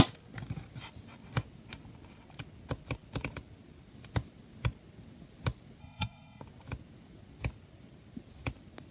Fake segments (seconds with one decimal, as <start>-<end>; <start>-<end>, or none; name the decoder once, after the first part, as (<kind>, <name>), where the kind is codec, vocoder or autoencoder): 5.8-6.4 (codec, SNAC)